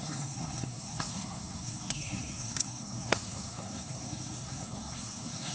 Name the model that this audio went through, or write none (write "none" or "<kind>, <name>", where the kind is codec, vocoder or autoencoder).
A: codec, SNAC